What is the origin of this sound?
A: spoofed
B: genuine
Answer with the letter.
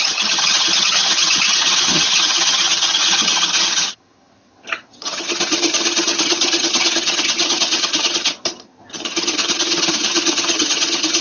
A